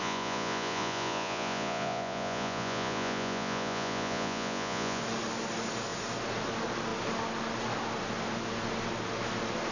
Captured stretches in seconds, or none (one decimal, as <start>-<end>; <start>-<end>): 5.0-9.7

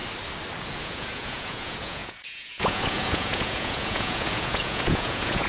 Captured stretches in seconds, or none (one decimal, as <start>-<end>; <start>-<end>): 0.0-0.8

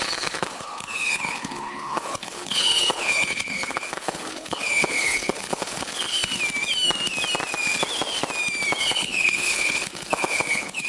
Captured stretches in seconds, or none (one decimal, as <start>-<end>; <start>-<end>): 6.2-8.8

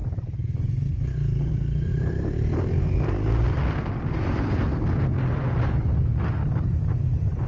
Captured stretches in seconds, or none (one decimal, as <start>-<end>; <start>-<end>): 0.0-1.5

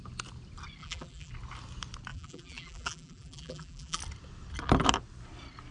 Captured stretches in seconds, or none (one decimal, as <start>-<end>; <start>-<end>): 0.0-0.8; 1.3-2.1; 4.0-5.7

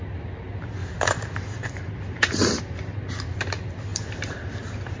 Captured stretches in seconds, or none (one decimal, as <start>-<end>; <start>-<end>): 0.0-0.8; 2.6-3.9

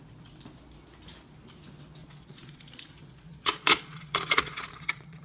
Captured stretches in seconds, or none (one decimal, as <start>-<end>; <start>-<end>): 0.0-2.0